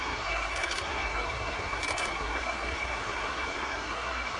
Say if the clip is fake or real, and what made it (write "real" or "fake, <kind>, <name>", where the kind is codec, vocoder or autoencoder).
fake, codec, SNAC